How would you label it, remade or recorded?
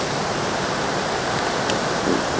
recorded